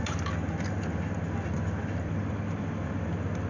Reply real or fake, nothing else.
real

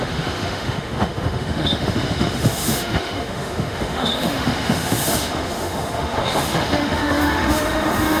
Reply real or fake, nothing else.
fake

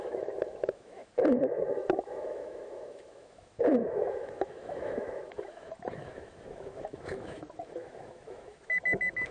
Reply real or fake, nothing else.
fake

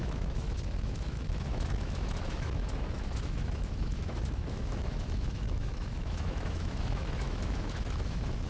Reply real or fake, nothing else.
fake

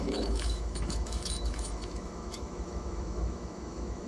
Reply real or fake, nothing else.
fake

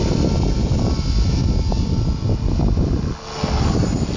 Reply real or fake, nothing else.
real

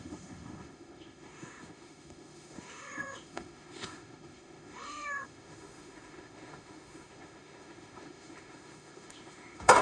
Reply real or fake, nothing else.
fake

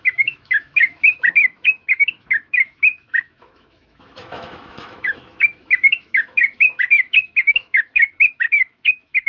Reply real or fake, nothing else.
fake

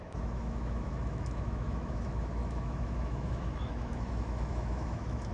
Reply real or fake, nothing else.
fake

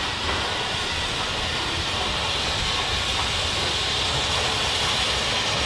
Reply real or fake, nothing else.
real